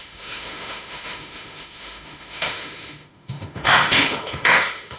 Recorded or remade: remade